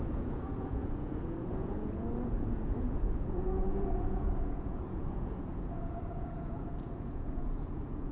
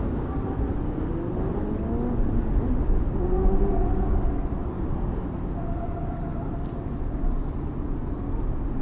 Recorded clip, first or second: second